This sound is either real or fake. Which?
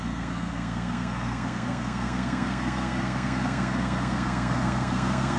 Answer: fake